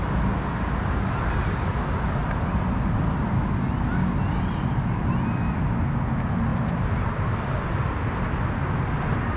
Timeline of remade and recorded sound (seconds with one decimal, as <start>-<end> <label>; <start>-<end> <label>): 0.0-6.5 recorded; 6.5-7.2 remade; 7.2-9.4 recorded